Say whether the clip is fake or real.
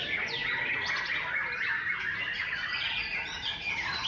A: real